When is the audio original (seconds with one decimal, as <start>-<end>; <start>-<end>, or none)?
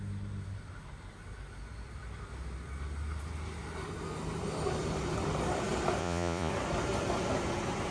0.0-6.0; 6.5-7.9